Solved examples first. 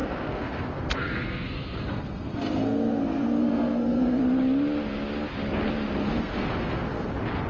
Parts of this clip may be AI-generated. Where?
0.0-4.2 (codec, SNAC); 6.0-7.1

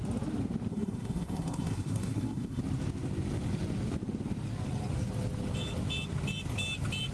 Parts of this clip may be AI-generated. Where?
0.7-2.6 (codec, SNAC)

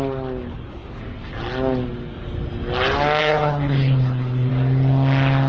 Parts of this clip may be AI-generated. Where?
0.5-1.0 (codec, HILCodec); 3.2-4.5